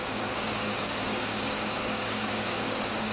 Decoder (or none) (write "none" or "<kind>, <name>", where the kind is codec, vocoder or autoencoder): codec, DAC